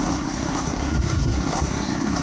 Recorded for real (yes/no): no